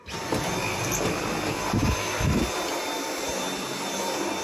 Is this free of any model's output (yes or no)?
yes